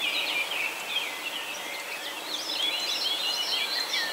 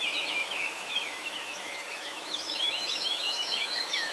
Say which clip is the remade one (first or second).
second